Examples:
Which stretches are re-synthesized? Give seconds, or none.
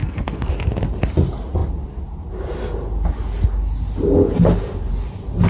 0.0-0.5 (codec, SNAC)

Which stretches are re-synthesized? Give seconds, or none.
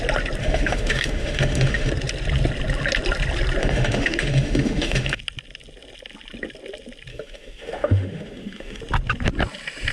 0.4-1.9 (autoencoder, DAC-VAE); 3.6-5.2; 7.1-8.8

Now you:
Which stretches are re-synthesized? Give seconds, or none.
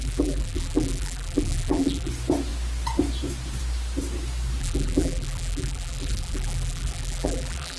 0.0-2.1 (vocoder, BigVGAN v2); 4.6-7.8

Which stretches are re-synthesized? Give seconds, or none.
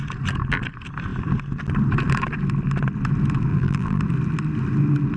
3.5-4.0 (vocoder, BigVGAN v2)